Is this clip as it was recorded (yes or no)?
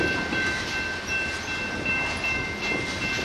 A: yes